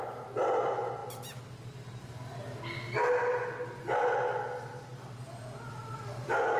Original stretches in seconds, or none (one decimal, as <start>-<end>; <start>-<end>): 0.0-6.6

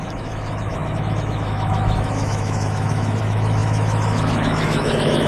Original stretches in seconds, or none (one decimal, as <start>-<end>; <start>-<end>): none

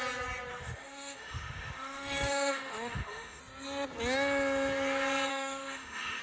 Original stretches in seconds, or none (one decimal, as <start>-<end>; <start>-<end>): 0.0-0.5; 3.4-5.3

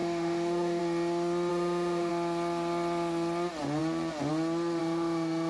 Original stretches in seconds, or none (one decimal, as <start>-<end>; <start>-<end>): 0.8-1.5; 2.1-4.8

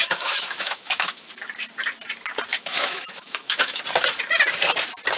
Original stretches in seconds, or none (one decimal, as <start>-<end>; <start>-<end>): 1.3-2.5; 3.8-5.2